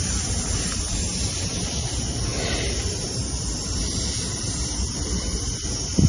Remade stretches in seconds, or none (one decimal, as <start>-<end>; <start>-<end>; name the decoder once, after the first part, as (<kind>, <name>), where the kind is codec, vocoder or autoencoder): none